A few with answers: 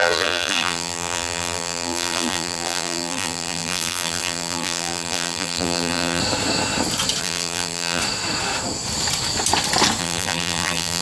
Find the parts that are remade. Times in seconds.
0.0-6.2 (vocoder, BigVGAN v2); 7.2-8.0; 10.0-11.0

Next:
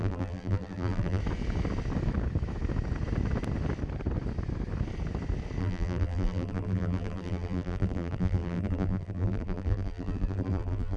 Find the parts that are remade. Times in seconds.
0.0-1.2 (vocoder, BigVGAN v2); 5.6-11.0

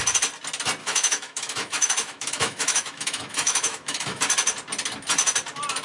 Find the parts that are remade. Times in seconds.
0.8-4.2 (autoencoder, DAC-VAE)

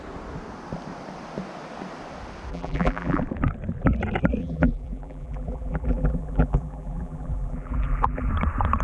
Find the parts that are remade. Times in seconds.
2.5-3.2 (vocoder, BigVGAN v2); 4.4-8.3

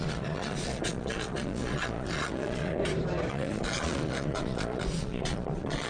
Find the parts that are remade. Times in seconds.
0.0-2.8 (vocoder, Vocos); 3.3-5.9

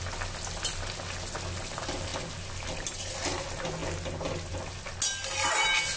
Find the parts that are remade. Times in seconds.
none